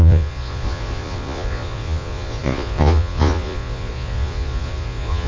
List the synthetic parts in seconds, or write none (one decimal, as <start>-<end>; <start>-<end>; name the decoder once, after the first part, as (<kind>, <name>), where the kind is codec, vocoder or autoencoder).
0.0-5.3 (vocoder, Vocos)